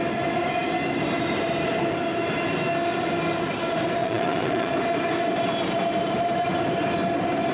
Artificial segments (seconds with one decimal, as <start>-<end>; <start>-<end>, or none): 4.0-4.7